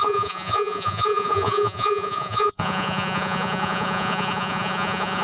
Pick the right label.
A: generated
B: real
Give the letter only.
A